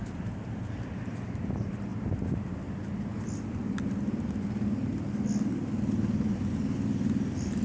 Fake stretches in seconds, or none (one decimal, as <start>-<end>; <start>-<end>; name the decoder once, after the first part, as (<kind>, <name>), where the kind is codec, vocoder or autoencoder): none